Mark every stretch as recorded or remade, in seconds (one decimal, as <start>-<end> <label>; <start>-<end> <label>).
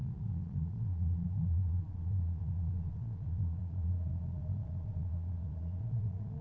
0.0-6.4 remade